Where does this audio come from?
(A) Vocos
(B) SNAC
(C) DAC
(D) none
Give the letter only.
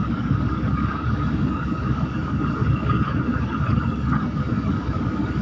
C